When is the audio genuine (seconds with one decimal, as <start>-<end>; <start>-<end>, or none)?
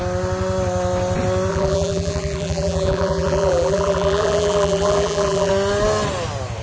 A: 0.0-1.5; 5.5-6.6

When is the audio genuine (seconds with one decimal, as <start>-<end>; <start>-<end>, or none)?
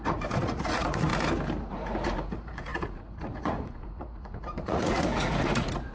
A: 1.1-1.7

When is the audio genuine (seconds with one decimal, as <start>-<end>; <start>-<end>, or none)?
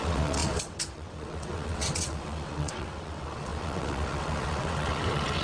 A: none